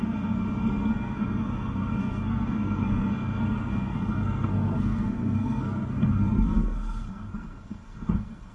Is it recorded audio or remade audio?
remade